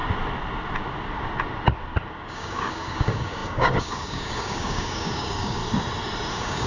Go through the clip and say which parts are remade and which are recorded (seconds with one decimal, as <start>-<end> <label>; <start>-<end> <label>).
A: 0.0-2.1 recorded; 2.1-5.6 remade; 5.6-6.3 recorded; 6.3-6.7 remade

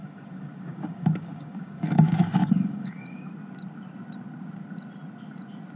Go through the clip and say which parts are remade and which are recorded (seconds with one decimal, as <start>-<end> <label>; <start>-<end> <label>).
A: 0.0-3.3 remade; 3.3-5.8 recorded